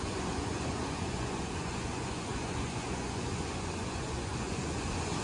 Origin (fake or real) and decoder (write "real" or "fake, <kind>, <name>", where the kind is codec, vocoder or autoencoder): fake, vocoder, Vocos